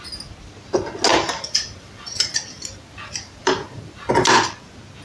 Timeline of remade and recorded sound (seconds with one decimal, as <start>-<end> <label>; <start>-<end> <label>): 0.0-1.1 recorded; 1.1-4.1 remade; 4.1-5.0 recorded